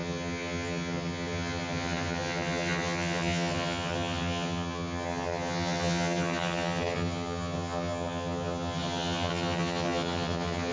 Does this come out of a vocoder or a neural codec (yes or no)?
yes